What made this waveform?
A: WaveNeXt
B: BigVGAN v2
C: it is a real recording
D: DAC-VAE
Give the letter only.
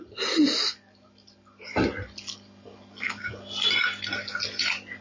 C